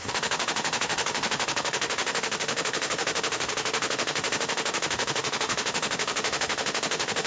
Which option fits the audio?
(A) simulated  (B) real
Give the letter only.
A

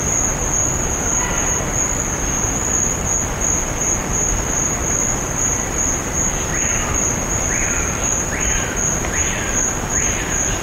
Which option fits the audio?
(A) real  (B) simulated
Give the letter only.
A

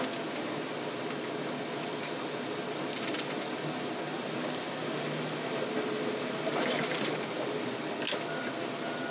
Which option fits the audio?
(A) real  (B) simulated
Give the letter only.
A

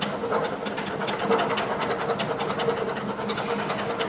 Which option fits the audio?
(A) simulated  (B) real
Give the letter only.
B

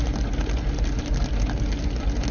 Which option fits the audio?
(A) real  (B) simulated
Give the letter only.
A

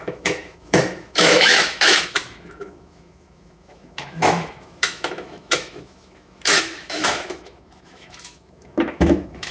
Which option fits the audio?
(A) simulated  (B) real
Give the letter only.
A